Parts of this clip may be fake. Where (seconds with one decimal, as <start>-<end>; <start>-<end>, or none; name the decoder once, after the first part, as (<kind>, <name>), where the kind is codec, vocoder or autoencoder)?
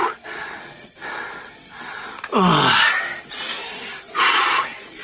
0.0-1.0 (vocoder, Vocos); 4.0-5.0